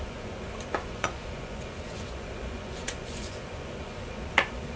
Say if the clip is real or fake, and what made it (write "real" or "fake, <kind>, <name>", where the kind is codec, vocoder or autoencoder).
fake, vocoder, Vocos